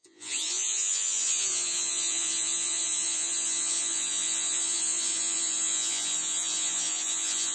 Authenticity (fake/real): fake